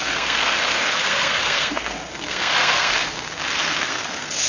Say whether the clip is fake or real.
fake